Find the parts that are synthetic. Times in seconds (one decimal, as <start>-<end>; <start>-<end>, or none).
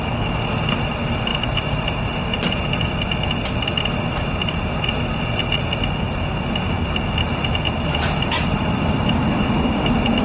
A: 1.3-1.9